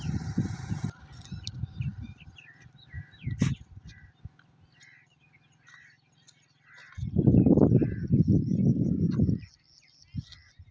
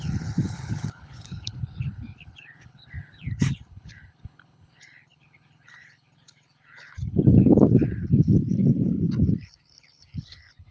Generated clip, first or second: second